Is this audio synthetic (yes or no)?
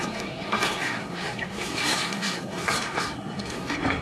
yes